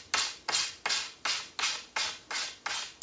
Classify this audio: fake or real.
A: real